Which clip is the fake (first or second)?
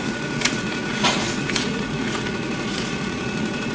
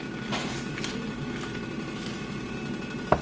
first